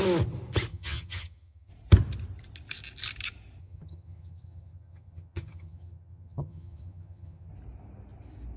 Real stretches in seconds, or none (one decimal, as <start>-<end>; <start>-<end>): 0.0-0.7; 1.7-3.6; 7.5-8.6